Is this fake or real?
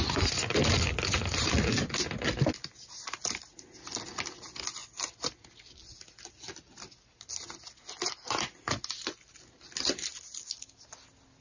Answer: real